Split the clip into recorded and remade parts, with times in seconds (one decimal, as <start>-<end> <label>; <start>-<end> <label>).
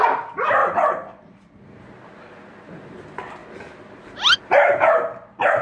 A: 0.0-0.6 recorded; 0.6-1.8 remade; 1.8-5.6 recorded